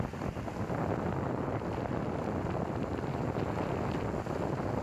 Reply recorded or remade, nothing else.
recorded